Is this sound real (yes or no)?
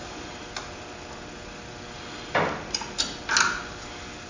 yes